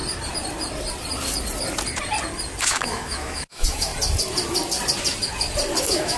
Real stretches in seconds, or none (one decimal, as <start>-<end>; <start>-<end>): 0.0-2.6; 3.9-5.8